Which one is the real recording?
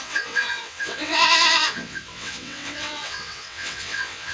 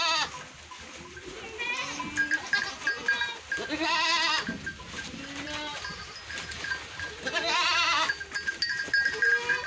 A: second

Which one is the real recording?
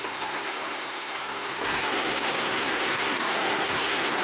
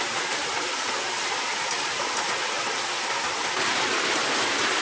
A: second